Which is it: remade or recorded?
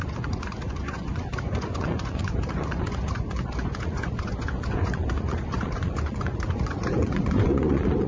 remade